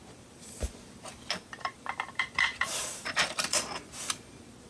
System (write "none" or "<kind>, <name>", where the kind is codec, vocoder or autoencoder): vocoder, BigVGAN v2